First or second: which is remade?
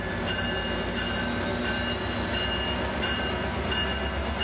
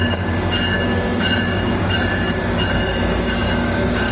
second